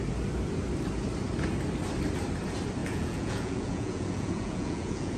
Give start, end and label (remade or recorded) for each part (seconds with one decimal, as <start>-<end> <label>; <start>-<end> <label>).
0.0-2.8 recorded; 2.8-5.2 remade